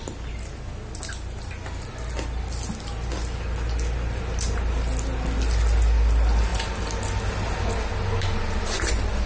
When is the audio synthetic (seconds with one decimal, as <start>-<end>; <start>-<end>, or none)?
none